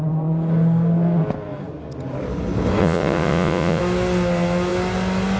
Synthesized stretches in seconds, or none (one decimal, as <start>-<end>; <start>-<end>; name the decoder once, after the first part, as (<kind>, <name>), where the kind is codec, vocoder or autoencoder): 2.8-3.8 (vocoder, Vocos)